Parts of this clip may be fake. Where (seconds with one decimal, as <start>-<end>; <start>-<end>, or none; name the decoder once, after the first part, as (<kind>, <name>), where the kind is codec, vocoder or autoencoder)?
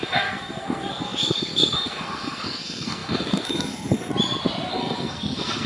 0.0-4.1 (codec, SNAC); 4.7-5.7